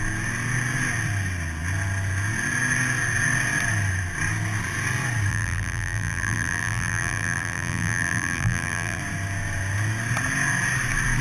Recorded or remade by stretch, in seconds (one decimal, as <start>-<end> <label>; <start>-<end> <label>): 0.0-5.3 recorded; 5.3-9.0 remade; 9.0-11.2 recorded